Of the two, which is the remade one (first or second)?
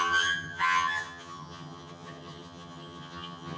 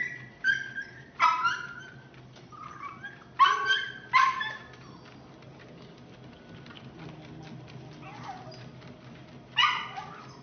first